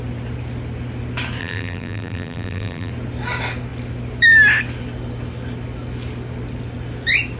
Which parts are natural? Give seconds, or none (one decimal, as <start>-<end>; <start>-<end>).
0.0-1.4; 2.9-7.4